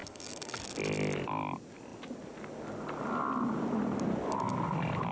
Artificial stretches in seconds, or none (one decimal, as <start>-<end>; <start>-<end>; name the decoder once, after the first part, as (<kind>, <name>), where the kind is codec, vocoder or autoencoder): 0.0-0.6 (codec, SNAC)